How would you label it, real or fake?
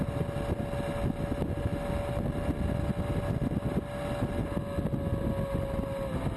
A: real